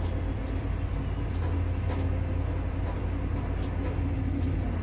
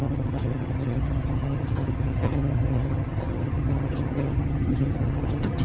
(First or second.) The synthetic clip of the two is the second